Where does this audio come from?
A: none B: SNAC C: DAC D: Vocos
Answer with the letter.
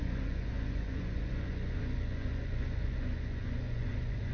D